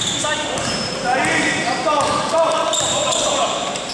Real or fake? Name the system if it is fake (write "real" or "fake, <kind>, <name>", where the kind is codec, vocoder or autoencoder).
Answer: fake, vocoder, BigVGAN v2